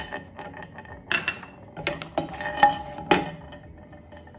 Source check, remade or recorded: recorded